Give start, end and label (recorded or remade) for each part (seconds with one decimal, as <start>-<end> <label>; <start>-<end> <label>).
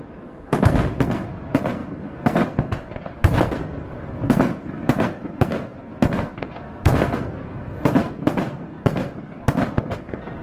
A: 0.0-10.4 remade